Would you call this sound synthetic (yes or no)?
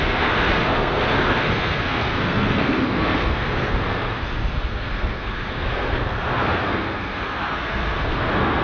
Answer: yes